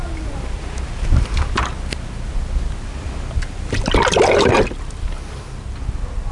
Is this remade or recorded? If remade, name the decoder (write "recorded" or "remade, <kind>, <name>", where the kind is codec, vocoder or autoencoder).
recorded